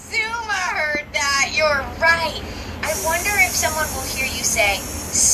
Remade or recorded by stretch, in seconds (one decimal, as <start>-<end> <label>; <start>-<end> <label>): 0.0-5.3 recorded